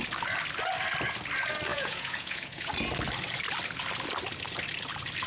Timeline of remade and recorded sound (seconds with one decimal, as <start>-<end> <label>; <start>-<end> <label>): 0.0-1.7 recorded; 1.7-2.7 remade; 2.7-5.3 recorded